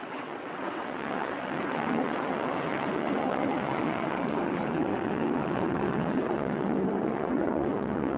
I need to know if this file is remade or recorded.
remade